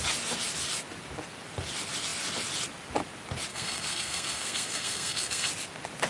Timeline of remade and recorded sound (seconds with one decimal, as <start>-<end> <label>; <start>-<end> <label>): 0.0-3.5 recorded; 3.5-5.5 remade; 5.5-6.1 recorded

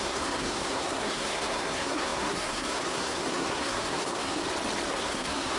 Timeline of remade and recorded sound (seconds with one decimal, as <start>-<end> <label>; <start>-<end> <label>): 0.0-4.4 remade; 4.4-4.9 recorded; 4.9-5.6 remade

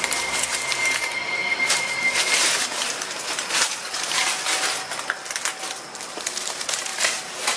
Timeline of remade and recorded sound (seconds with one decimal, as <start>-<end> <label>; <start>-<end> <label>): 0.0-4.2 remade; 4.2-6.1 recorded; 6.1-7.6 remade

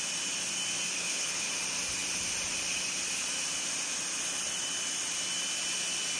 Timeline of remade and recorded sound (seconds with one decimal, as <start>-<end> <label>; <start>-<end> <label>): 0.0-1.0 recorded; 1.0-1.5 remade; 1.5-6.2 recorded

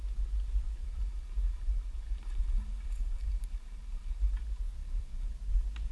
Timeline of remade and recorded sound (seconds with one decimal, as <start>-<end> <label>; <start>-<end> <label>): 0.0-0.8 recorded; 0.8-4.3 remade; 4.3-4.8 recorded; 4.8-5.3 remade; 5.3-5.9 recorded